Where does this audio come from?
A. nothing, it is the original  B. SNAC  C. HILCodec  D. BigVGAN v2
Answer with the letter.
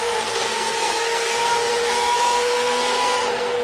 B